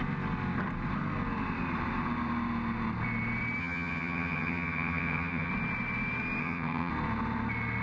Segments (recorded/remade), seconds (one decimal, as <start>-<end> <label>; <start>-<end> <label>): 0.0-3.6 recorded; 3.6-5.5 remade; 5.5-6.4 recorded; 6.4-6.9 remade; 6.9-7.8 recorded